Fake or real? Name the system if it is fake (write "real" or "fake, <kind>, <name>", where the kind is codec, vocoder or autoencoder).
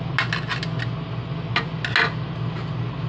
real